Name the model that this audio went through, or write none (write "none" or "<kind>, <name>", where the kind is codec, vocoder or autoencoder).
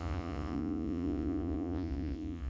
vocoder, Vocos